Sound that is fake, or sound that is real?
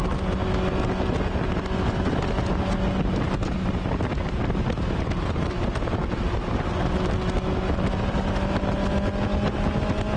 real